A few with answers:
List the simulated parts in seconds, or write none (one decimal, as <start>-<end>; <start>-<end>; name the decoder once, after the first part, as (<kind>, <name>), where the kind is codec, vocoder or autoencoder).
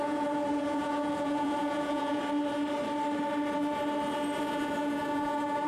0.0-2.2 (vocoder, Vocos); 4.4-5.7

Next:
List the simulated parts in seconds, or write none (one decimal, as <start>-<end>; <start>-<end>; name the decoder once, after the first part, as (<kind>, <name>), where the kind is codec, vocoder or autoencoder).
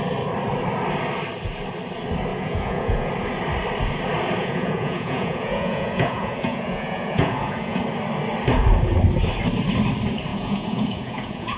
2.3-3.1 (vocoder, Vocos); 4.4-7.8; 10.3-11.6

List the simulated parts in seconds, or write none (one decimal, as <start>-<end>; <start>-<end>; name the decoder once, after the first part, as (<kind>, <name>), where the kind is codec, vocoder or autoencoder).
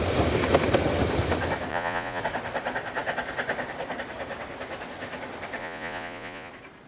1.7-2.2 (vocoder, Vocos); 5.6-6.5